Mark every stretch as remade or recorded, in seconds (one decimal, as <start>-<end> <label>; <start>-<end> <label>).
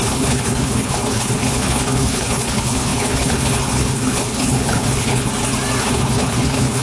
0.0-5.3 remade; 5.3-5.8 recorded; 5.8-6.8 remade